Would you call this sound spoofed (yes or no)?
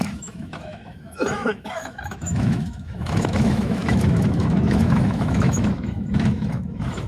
yes